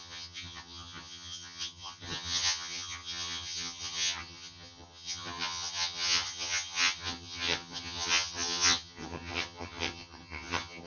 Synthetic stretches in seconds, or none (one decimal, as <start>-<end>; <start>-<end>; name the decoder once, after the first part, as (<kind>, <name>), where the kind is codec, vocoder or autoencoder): 0.0-10.9 (vocoder, HiFi-GAN)